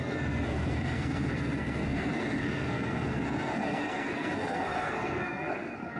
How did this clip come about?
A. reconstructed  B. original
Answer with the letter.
A